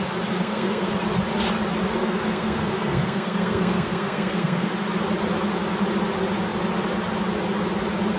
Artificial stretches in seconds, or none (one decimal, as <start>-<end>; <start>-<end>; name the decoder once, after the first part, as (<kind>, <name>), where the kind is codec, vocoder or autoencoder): 0.4-0.9 (codec, SNAC); 2.0-4.7